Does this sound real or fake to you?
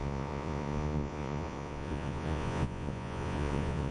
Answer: fake